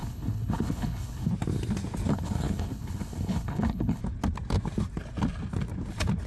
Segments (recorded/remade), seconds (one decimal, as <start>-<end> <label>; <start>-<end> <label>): 0.0-1.3 remade; 1.3-2.1 recorded; 2.1-4.0 remade; 4.0-6.3 recorded